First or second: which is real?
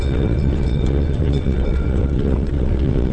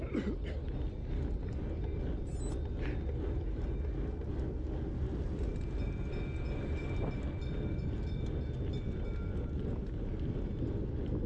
second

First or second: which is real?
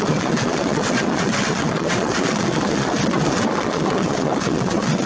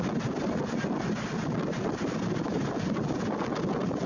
second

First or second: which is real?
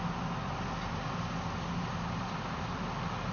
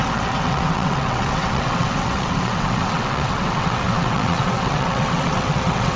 first